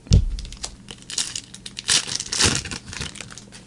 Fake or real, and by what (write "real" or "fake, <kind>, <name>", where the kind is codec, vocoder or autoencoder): real